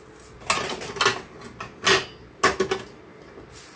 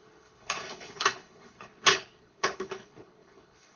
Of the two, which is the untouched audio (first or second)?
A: first